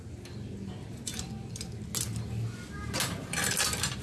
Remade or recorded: recorded